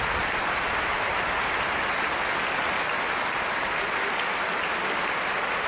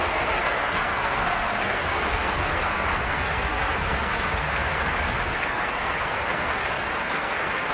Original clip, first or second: first